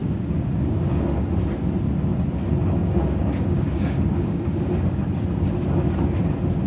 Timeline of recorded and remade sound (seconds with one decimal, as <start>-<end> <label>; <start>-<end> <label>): 0.0-0.8 remade; 0.8-2.8 recorded; 2.8-5.0 remade; 5.0-6.7 recorded